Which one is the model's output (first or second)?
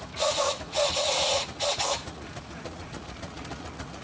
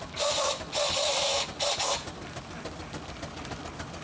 first